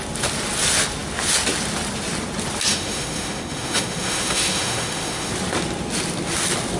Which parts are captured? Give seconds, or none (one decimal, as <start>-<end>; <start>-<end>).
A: 0.0-2.7; 5.3-6.8